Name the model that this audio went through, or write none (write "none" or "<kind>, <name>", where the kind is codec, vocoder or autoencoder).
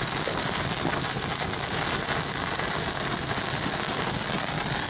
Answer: none